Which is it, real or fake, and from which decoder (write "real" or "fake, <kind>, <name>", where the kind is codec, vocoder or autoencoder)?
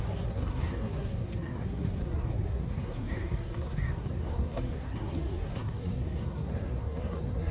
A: fake, codec, SNAC